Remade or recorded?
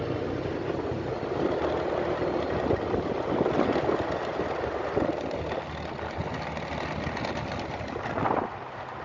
recorded